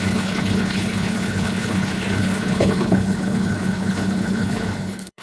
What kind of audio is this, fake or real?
fake